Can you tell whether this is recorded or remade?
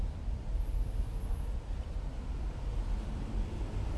remade